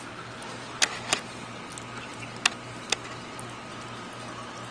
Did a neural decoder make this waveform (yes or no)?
no